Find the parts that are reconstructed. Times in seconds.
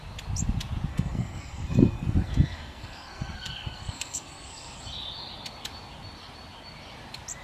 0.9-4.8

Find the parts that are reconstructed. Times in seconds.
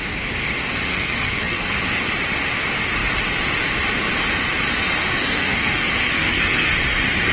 0.9-1.7; 5.0-6.7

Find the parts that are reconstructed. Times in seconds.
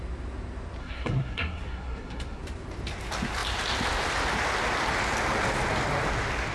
0.8-2.4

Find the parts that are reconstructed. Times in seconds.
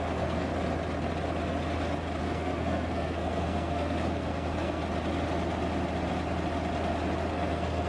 0.0-0.5; 2.2-4.8; 7.3-7.9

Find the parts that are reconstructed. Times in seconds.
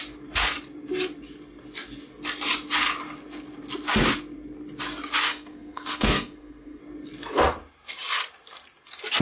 5.3-6.8